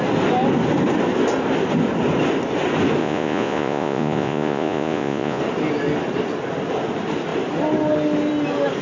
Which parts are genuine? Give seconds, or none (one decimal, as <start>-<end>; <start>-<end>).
0.0-3.0; 5.4-8.8